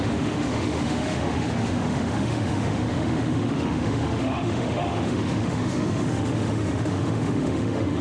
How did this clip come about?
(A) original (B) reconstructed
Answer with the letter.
B